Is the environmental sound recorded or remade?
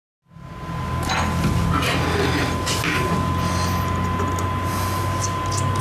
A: recorded